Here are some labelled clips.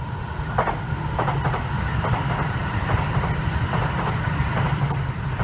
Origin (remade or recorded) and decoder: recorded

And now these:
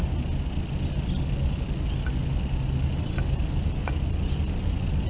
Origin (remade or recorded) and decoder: recorded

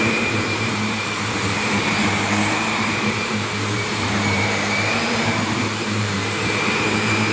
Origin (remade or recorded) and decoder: remade, vocoder, BigVGAN v2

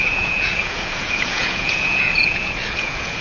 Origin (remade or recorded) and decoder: remade, vocoder, Vocos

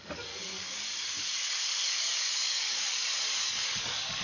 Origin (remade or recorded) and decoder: remade, codec, DAC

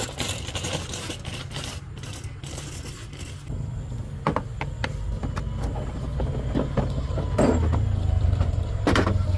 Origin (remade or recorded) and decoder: recorded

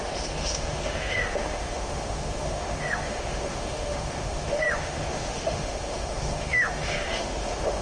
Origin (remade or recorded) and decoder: remade, autoencoder, DAC-VAE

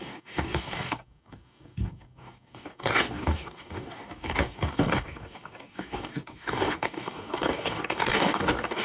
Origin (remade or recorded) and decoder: remade, codec, DAC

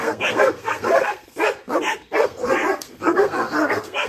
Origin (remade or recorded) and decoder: remade, codec, SNAC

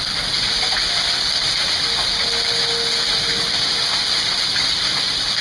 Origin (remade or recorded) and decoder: recorded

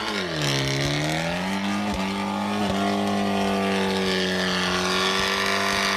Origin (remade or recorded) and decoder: recorded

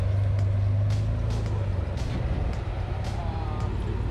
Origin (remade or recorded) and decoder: recorded